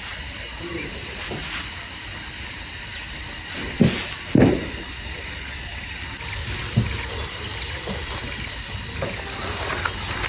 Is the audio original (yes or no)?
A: yes